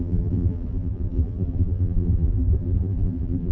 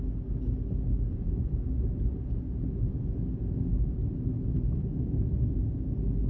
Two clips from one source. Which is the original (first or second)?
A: second